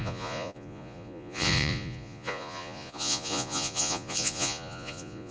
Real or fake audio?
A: fake